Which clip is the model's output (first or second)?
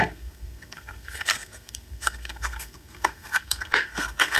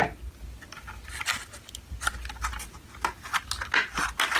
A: first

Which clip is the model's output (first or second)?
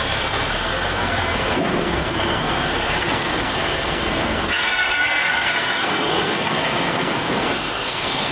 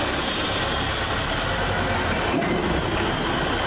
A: first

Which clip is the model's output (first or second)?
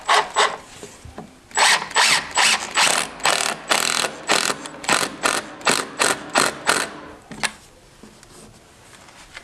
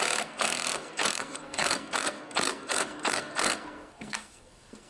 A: second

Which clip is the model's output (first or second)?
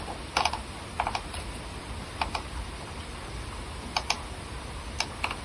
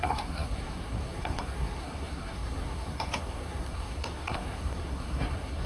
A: second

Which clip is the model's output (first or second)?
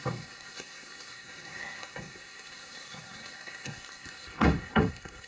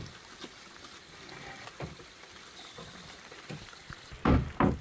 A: first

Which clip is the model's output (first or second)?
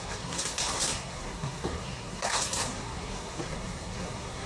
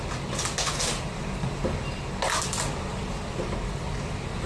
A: first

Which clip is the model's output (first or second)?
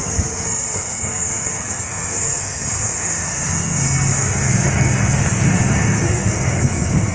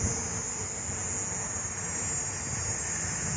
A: first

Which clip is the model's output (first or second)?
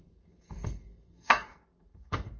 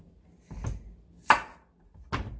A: first